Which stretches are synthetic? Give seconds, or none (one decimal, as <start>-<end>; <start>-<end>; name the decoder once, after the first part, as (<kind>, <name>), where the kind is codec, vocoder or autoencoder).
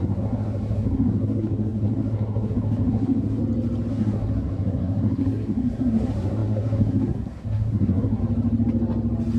0.0-3.4 (codec, SNAC); 3.9-8.2